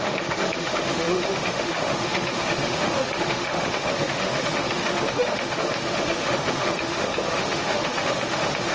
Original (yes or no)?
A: no